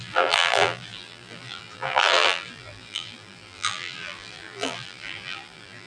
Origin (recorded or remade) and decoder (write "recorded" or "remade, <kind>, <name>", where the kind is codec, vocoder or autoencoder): remade, vocoder, BigVGAN v2